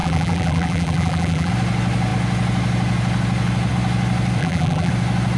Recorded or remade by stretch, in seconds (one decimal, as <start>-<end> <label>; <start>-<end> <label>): 0.0-1.5 remade; 1.5-4.4 recorded; 4.4-4.9 remade; 4.9-5.4 recorded

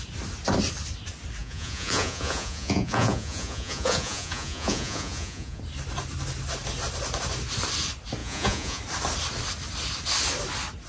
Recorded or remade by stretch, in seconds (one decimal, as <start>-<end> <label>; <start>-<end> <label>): 0.0-1.4 recorded; 1.4-5.6 remade; 5.6-8.2 recorded; 8.2-8.8 remade; 8.8-10.9 recorded

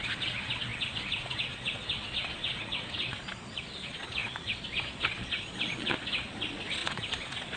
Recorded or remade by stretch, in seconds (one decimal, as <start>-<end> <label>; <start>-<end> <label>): 0.0-7.6 remade

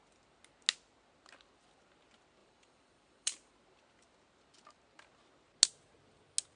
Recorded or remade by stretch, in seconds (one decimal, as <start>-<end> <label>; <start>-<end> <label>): 0.0-2.4 recorded; 2.4-3.5 remade; 3.5-6.6 recorded